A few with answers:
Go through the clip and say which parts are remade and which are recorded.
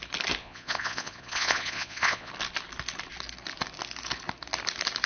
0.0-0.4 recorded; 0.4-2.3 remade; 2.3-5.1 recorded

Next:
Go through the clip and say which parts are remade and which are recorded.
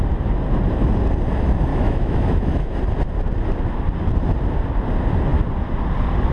0.0-1.7 recorded; 1.7-2.8 remade; 2.8-6.3 recorded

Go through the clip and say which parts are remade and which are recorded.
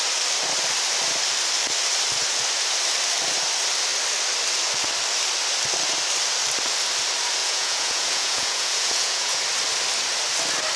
0.0-7.4 recorded; 7.4-9.4 remade; 9.4-10.8 recorded